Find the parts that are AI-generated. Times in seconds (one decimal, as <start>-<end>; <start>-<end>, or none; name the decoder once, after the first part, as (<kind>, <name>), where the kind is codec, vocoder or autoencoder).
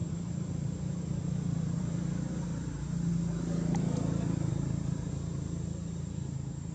0.0-3.1 (vocoder, BigVGAN v2); 4.5-5.1